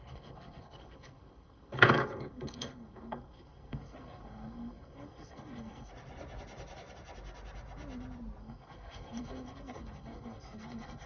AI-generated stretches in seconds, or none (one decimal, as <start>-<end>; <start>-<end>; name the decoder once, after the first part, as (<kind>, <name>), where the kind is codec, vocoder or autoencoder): 0.0-5.9 (codec, SNAC); 8.4-11.1

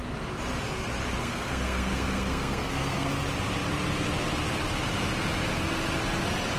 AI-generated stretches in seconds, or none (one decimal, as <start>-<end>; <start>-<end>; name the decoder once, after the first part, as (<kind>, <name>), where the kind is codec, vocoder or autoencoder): 1.2-3.1 (codec, SNAC)

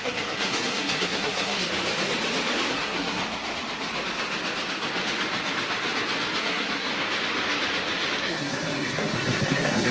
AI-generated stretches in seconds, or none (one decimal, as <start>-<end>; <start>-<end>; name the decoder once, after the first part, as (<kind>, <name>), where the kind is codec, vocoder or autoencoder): 0.0-1.7 (codec, SNAC); 2.7-3.2; 6.4-6.9; 8.2-9.9

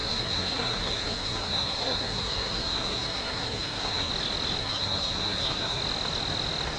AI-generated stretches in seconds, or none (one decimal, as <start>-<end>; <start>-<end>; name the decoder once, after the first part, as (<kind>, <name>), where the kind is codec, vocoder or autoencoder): 0.0-4.1 (codec, SNAC); 4.6-5.8